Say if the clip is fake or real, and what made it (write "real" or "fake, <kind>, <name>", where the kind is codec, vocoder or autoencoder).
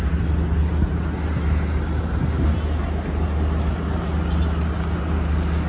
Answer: real